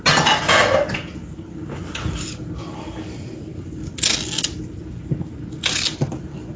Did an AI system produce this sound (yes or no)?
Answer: no